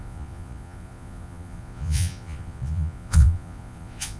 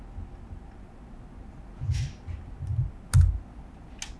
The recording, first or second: second